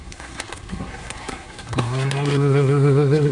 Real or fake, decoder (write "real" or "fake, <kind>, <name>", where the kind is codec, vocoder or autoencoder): fake, codec, SNAC